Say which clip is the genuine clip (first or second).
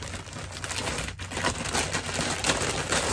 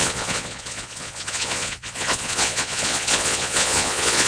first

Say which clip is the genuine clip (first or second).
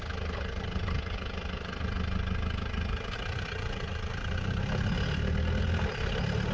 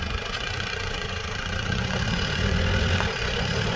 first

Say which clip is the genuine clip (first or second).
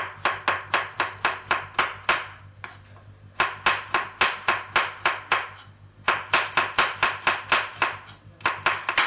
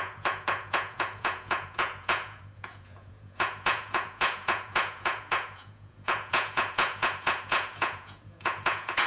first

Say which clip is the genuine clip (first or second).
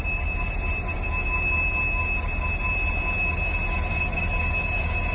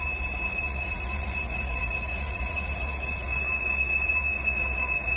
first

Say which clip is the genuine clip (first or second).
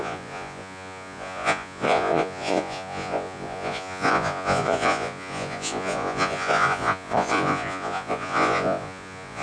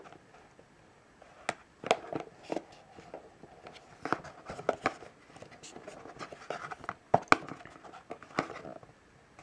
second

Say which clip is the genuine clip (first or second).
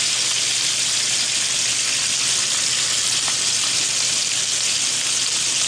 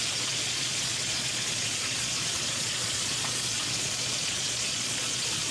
first